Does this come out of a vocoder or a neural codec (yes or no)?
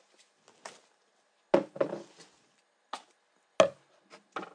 no